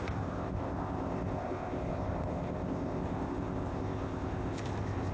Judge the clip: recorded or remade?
remade